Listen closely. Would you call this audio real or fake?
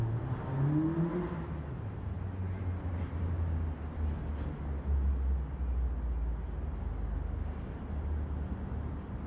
real